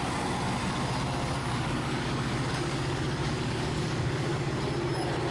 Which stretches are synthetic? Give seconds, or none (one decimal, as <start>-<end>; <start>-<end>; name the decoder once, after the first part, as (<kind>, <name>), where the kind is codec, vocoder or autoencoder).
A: 1.4-4.6 (codec, DAC)